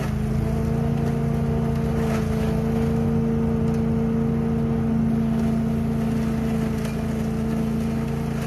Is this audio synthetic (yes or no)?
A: no